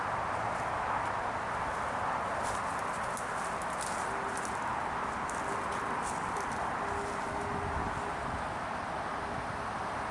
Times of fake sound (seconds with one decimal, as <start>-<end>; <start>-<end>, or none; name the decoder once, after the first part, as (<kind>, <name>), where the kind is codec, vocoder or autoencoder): none